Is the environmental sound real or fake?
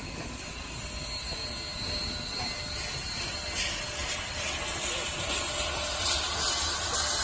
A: real